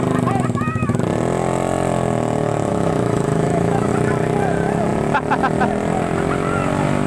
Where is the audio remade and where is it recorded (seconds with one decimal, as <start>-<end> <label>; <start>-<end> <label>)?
0.0-2.7 recorded; 2.7-3.9 remade; 3.9-7.1 recorded